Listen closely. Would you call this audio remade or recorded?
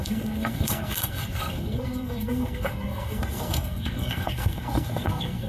remade